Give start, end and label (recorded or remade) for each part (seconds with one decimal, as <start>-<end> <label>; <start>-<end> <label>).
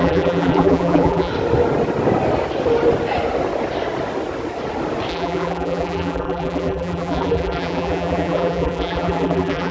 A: 0.0-1.3 remade; 1.3-5.1 recorded; 5.1-9.7 remade